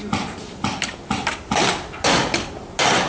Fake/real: real